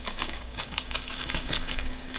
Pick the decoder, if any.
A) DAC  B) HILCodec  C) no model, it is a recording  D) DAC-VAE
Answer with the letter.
A